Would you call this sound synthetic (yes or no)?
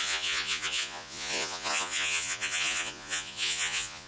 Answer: yes